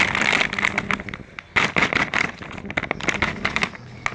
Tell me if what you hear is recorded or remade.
recorded